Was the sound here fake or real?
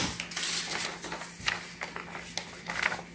real